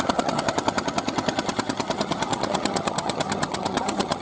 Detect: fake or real fake